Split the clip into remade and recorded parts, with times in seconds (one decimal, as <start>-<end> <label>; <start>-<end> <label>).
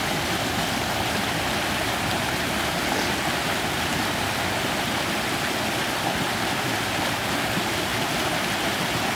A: 0.0-9.2 recorded